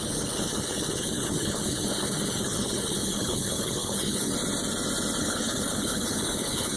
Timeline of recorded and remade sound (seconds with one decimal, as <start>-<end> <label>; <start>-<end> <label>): 0.0-4.3 remade; 4.3-5.2 recorded; 5.2-6.8 remade